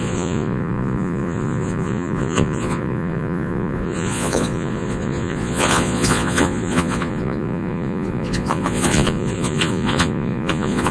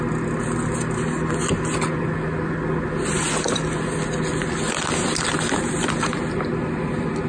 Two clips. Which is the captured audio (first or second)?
second